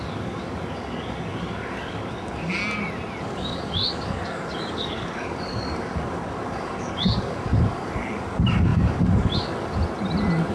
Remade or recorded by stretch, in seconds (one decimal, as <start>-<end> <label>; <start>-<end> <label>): 0.0-2.6 remade; 2.6-3.2 recorded; 3.2-9.8 remade; 9.8-10.5 recorded